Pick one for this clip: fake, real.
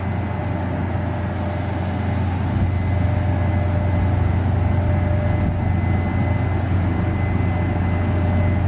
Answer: real